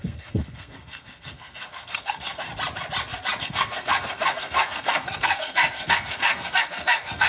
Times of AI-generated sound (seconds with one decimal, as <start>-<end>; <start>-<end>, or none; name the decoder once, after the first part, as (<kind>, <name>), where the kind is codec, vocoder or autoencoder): 0.0-2.5 (codec, SNAC); 3.4-7.3